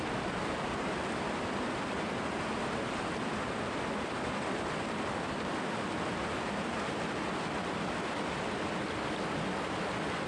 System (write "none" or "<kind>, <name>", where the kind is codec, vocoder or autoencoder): none